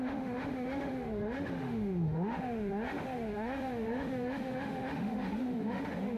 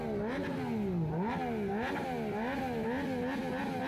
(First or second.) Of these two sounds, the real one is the second